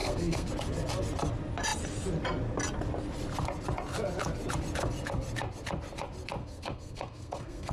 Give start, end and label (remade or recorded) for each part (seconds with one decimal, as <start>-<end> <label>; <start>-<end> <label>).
0.0-0.5 remade; 0.5-6.4 recorded; 6.4-7.7 remade